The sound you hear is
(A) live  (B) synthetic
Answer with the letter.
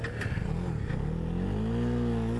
A